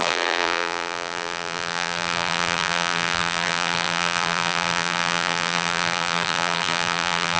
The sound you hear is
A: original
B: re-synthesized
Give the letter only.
B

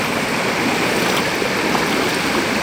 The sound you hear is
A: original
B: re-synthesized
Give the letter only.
A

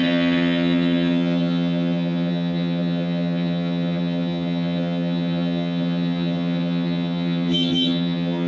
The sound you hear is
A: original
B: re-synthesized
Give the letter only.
B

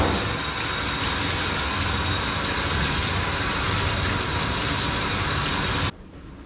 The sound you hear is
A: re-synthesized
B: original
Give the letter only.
B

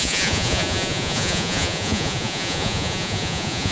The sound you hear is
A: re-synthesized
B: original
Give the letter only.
A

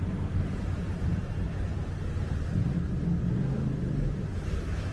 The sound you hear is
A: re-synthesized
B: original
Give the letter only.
B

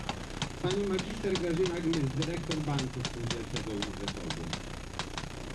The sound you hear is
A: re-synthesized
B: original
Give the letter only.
B